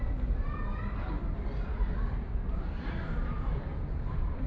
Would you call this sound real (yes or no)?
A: no